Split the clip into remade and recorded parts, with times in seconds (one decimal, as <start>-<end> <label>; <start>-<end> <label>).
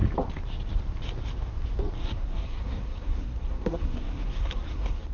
0.0-2.0 recorded; 2.0-5.1 remade